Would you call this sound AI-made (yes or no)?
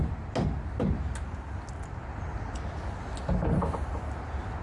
no